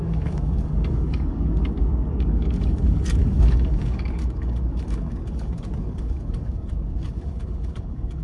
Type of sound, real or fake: fake